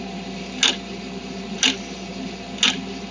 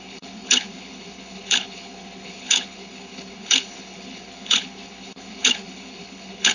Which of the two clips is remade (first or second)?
second